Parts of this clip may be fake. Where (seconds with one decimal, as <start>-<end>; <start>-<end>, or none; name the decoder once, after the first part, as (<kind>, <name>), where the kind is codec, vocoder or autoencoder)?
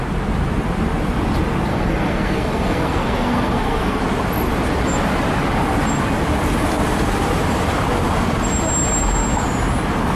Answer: 1.7-4.0 (codec, SNAC)